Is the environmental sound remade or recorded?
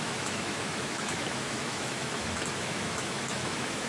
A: remade